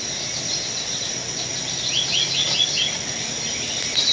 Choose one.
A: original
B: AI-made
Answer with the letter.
A